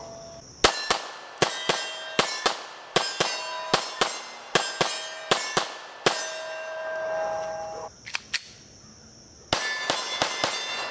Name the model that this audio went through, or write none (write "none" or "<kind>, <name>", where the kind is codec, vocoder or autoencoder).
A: none